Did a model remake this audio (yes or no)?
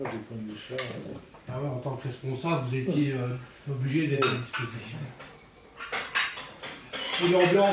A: no